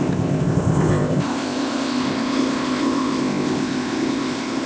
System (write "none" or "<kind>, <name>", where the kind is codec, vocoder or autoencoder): codec, ZipCodec